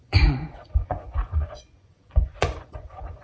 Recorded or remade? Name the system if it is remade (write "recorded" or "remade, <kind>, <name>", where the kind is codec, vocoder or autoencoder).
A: remade, vocoder, Vocos